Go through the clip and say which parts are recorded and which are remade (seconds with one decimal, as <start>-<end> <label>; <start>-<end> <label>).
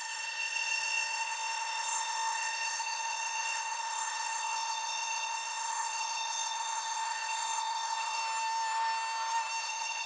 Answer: 0.0-8.2 remade; 8.2-9.6 recorded; 9.6-10.1 remade